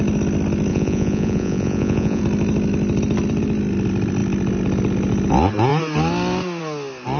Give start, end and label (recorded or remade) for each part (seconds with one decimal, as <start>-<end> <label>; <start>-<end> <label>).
0.0-0.7 recorded; 0.7-2.2 remade; 2.2-7.2 recorded

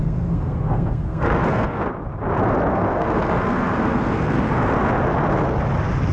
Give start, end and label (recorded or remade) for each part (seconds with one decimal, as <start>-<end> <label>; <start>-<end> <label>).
0.0-1.8 remade; 1.8-2.7 recorded; 2.7-4.6 remade; 4.6-6.1 recorded

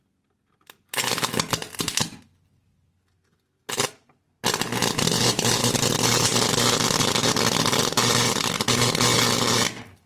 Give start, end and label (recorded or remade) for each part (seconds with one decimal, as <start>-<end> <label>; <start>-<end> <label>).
0.0-10.1 recorded

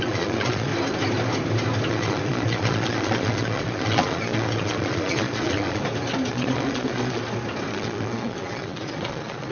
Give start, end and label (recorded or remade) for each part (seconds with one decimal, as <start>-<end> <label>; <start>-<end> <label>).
0.0-0.7 remade; 0.7-1.9 recorded; 1.9-5.8 remade; 5.8-6.3 recorded; 6.3-7.2 remade; 7.2-7.7 recorded; 7.7-9.5 remade

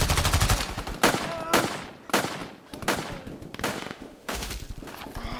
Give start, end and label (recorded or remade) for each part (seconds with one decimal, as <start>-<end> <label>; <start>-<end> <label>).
0.0-3.7 recorded; 3.7-4.5 remade; 4.5-5.4 recorded

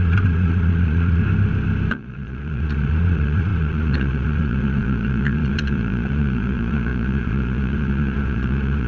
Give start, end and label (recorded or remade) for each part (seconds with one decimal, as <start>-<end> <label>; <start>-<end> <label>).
0.0-1.2 remade; 1.2-1.9 recorded; 1.9-8.9 remade

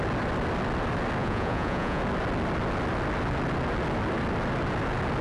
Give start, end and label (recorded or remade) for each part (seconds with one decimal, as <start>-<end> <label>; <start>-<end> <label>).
0.0-1.2 recorded; 1.2-2.0 remade; 2.0-5.2 recorded

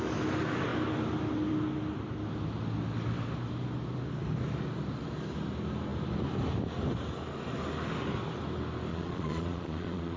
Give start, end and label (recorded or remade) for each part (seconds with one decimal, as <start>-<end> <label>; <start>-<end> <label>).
0.0-8.9 recorded; 8.9-10.2 remade